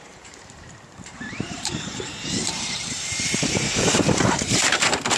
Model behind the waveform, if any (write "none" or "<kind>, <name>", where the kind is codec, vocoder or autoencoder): vocoder, BigVGAN v2